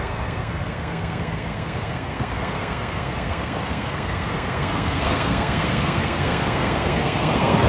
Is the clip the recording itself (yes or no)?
no